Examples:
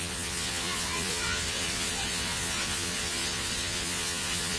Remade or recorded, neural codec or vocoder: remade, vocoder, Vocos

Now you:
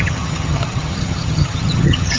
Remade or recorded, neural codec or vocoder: remade, vocoder, HiFi-GAN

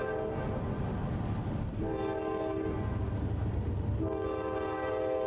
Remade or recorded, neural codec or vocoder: recorded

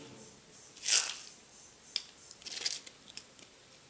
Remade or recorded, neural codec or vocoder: recorded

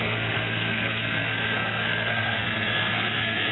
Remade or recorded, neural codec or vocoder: remade, codec, SNAC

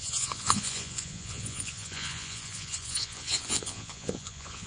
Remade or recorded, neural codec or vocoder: remade, vocoder, Vocos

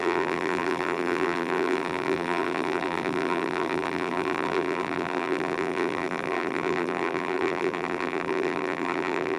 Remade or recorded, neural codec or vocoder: remade, vocoder, BigVGAN v2